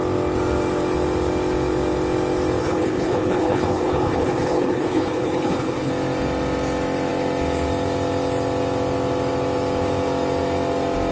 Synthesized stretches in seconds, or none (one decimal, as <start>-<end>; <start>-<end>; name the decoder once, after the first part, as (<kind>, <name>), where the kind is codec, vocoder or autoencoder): 2.6-5.9 (codec, HILCodec)